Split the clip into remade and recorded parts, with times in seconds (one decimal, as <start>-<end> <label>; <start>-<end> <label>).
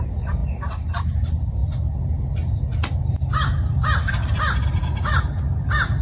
0.0-6.0 recorded